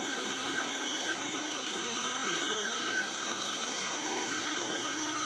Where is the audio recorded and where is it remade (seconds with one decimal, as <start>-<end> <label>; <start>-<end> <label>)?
0.0-5.2 remade